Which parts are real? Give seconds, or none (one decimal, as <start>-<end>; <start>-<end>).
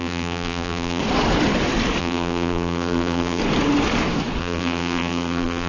1.0-2.0; 3.4-4.4